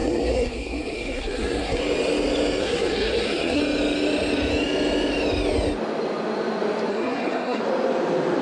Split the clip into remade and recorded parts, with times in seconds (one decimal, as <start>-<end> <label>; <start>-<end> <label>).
0.0-1.8 remade; 1.8-2.6 recorded; 2.6-3.6 remade; 3.6-6.9 recorded; 6.9-7.6 remade; 7.6-8.4 recorded